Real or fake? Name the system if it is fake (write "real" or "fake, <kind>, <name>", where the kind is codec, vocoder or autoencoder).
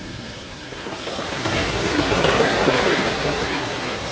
fake, codec, SNAC